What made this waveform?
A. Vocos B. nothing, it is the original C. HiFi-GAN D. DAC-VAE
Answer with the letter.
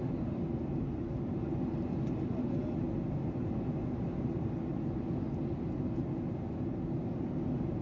B